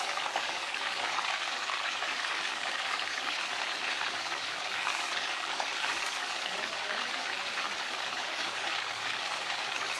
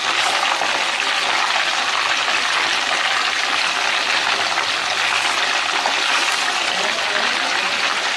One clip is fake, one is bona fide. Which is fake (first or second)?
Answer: first